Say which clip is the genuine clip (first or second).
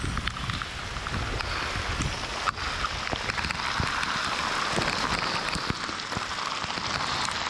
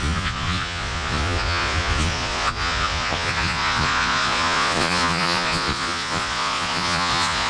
first